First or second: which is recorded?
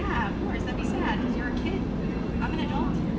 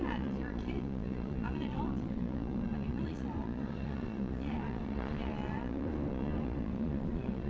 first